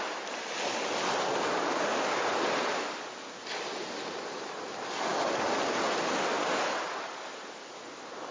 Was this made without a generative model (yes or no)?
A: yes